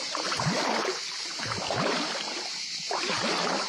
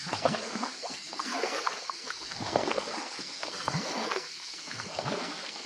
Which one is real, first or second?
first